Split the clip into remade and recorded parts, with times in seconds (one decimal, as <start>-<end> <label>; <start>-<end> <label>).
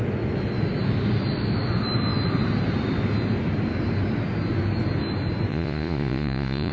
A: 0.0-5.5 recorded; 5.5-6.7 remade